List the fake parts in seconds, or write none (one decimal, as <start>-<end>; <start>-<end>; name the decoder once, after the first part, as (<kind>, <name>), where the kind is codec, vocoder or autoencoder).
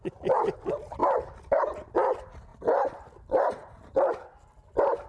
1.0-1.6 (vocoder, BigVGAN v2); 2.5-3.1; 3.6-4.6